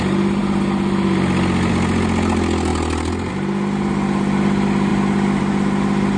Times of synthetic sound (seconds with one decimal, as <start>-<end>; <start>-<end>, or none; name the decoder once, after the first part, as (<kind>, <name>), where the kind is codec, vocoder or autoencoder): none